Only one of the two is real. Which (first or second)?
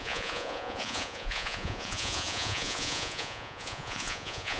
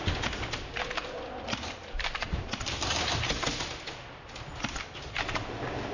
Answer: second